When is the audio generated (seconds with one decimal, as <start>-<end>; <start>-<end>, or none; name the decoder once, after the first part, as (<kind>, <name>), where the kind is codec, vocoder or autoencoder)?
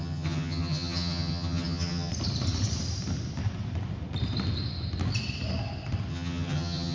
0.0-2.1 (vocoder, HiFi-GAN); 6.1-6.9